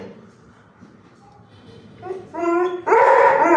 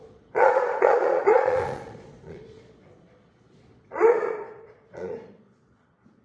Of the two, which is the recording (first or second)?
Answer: first